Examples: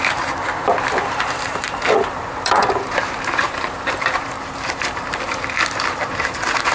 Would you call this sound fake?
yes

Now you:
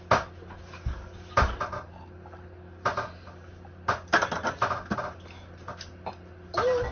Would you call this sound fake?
no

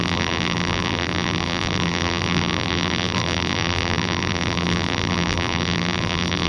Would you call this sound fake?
yes